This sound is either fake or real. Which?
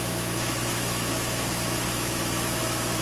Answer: fake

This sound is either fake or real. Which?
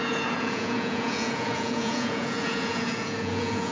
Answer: fake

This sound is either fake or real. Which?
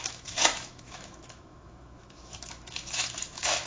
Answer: fake